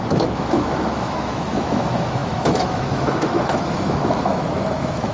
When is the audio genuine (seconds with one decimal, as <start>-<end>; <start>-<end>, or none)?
none